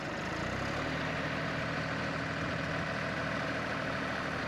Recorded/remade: recorded